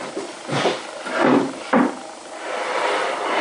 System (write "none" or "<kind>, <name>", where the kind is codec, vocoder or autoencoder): vocoder, BigVGAN v2